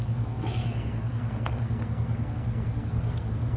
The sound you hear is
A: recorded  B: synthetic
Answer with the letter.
B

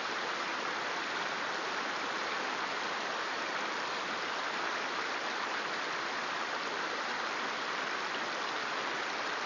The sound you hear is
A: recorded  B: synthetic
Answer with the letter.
A